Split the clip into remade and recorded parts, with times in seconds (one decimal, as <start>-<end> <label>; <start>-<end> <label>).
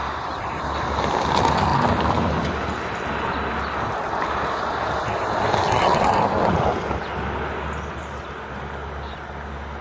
0.0-0.6 remade; 0.6-9.8 recorded